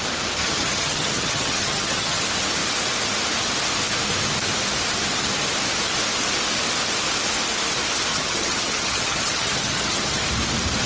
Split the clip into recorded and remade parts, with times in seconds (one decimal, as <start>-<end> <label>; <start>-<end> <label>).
0.0-0.4 recorded; 0.4-2.2 remade; 2.2-8.1 recorded; 8.1-10.2 remade; 10.2-10.9 recorded